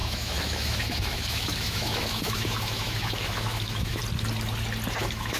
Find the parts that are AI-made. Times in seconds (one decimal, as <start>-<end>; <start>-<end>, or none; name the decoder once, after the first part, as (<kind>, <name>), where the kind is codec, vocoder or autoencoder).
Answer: 0.0-4.0 (autoencoder, DAC-VAE); 5.0-5.4